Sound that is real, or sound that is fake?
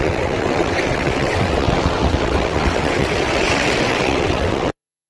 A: fake